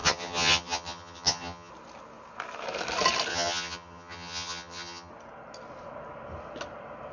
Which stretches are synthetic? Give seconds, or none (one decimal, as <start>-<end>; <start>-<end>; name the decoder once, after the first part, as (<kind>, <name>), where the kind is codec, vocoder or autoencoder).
0.0-1.7 (vocoder, HiFi-GAN); 3.3-5.1